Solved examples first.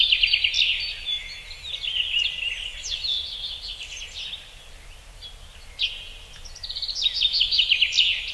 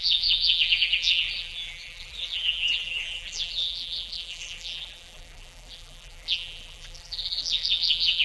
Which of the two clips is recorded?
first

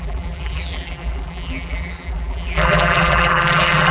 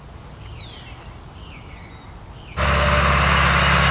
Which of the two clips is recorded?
second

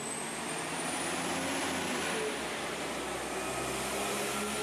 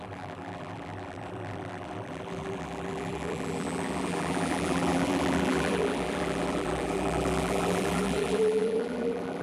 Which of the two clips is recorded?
first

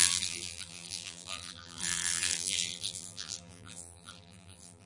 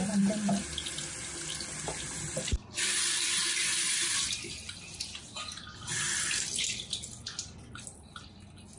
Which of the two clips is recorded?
second